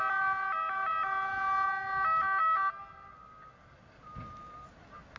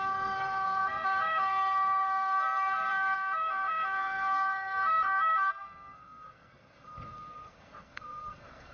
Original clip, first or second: first